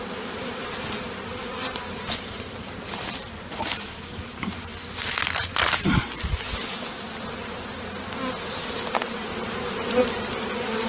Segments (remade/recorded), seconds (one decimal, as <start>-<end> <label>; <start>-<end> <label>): 0.0-4.7 remade; 4.7-8.9 recorded; 8.9-10.9 remade